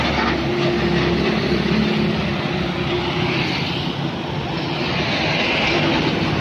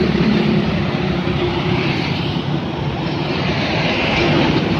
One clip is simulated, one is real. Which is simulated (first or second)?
second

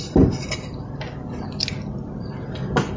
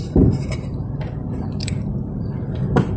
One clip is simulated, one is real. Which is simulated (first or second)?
second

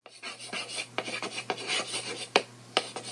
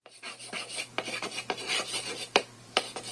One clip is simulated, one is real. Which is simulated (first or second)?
second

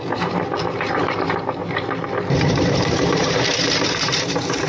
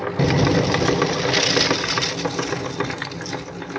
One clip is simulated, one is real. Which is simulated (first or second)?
first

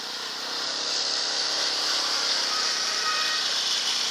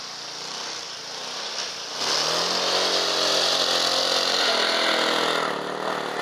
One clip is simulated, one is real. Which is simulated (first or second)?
first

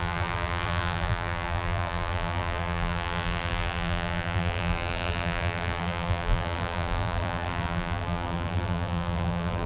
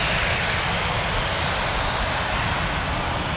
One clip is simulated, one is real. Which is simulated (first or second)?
first